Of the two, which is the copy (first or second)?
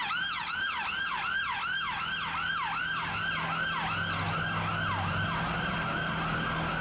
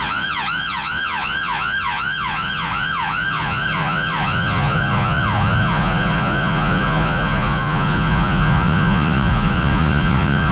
second